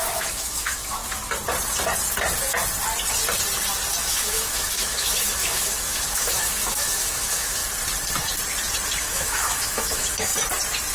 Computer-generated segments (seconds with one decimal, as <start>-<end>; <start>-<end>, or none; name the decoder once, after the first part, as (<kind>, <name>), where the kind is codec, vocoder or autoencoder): 0.0-1.0 (autoencoder, DAC-VAE); 4.0-7.6; 9.0-10.3